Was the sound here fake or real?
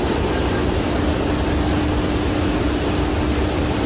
real